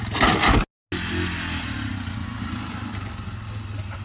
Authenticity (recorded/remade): recorded